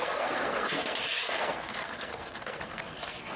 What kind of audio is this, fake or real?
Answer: fake